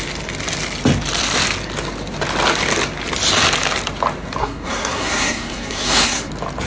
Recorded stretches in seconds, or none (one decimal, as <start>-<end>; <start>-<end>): 0.0-4.4; 6.3-6.7